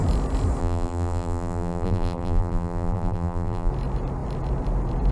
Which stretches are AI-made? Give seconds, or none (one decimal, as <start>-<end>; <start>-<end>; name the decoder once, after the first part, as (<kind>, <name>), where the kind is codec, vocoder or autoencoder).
0.6-3.7 (vocoder, BigVGAN v2)